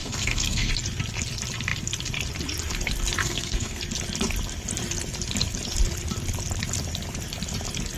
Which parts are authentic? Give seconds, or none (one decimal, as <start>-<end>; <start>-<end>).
0.7-3.2; 3.8-8.0